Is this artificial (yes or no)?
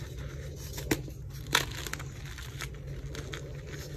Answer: no